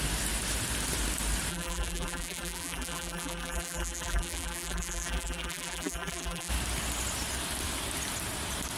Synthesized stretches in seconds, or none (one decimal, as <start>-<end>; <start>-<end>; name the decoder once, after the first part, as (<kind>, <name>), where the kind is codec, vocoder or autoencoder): 1.5-6.5 (vocoder, BigVGAN v2)